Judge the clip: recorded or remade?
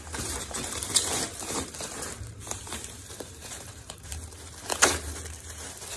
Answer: remade